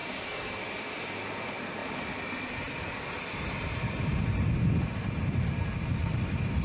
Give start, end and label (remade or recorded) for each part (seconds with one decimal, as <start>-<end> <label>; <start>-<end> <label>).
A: 0.0-0.6 remade; 0.6-6.6 recorded